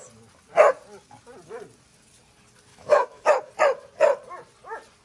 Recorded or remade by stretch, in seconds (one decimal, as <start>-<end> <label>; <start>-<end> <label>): 0.0-2.7 recorded; 2.7-3.5 remade; 3.5-5.0 recorded